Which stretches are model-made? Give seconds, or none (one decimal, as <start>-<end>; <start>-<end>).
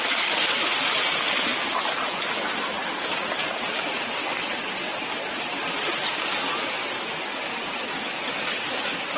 4.2-6.1